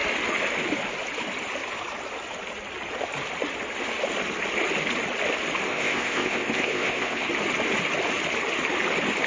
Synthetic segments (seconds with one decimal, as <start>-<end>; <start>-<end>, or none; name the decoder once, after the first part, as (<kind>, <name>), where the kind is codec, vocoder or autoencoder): 5.7-7.3 (codec, ZipCodec)